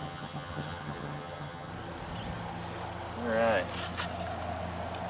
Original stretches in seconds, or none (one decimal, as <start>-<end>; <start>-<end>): 1.7-5.1

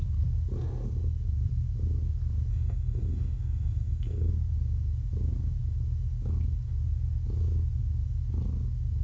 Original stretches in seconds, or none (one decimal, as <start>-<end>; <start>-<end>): 0.0-2.5; 4.3-9.0

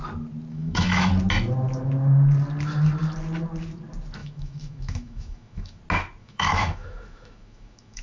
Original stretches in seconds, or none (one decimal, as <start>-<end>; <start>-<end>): 0.0-0.5; 1.1-4.2; 5.8-6.2